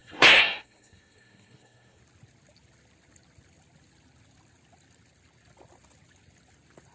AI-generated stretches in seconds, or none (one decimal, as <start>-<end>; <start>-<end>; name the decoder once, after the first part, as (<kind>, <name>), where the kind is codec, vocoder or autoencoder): 0.0-2.0 (codec, SNAC)